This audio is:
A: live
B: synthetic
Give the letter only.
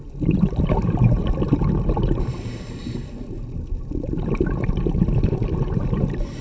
A